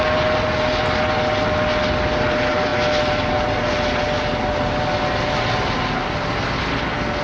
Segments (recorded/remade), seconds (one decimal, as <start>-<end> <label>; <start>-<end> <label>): 0.0-7.2 recorded